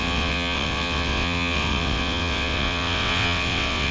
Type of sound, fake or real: fake